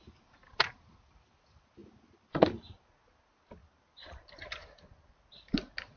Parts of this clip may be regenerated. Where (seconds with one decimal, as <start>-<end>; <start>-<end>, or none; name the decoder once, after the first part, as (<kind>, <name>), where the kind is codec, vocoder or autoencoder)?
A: none